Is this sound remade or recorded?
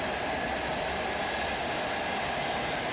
recorded